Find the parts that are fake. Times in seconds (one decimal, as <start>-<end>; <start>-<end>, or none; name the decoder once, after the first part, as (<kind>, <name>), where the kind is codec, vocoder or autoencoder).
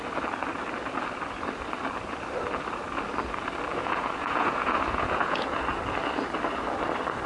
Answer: 3.8-5.6 (vocoder, Vocos)